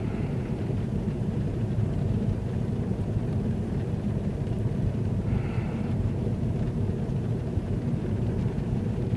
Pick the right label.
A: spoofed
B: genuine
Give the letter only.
A